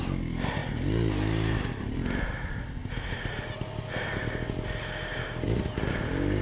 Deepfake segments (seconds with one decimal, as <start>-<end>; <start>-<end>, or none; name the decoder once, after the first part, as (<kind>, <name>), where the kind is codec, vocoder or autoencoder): 0.0-0.6 (vocoder, BigVGAN v2); 2.3-2.8; 5.9-6.4